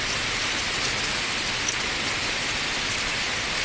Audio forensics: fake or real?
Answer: real